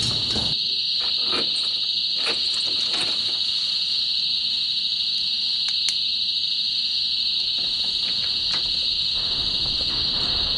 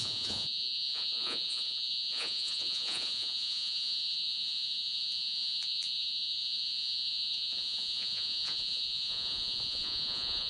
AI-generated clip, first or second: second